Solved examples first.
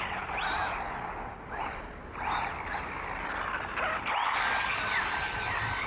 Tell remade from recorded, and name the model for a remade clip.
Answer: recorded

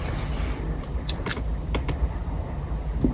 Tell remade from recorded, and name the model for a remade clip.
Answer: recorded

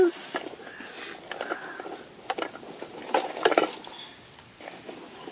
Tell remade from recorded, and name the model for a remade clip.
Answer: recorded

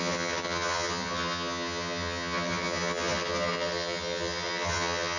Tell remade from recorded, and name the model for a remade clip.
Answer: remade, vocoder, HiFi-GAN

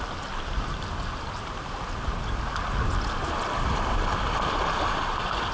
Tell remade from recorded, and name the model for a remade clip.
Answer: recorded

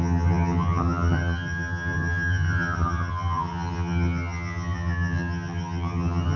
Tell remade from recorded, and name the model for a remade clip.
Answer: remade, vocoder, HiFi-GAN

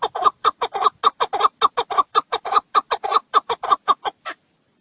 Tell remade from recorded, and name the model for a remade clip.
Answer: recorded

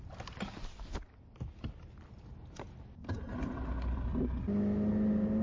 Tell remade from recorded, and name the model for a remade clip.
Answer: recorded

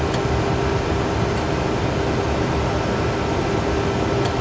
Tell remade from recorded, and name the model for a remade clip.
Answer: recorded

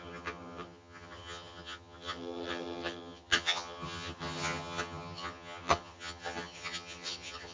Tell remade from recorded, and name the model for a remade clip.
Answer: remade, vocoder, HiFi-GAN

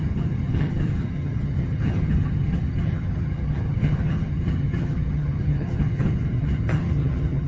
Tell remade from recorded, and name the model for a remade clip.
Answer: remade, vocoder, HiFi-GAN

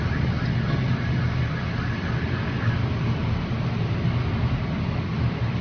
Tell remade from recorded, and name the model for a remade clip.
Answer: recorded